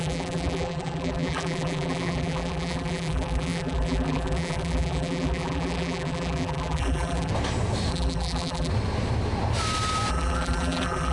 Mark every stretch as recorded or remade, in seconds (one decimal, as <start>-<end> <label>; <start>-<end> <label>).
0.0-7.3 remade; 7.3-7.9 recorded; 7.9-8.7 remade; 8.7-10.1 recorded; 10.1-11.1 remade